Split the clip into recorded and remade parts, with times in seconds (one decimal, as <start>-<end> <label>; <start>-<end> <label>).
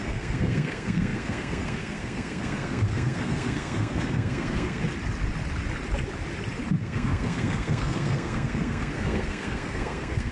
0.0-4.8 remade; 4.8-6.8 recorded; 6.8-10.3 remade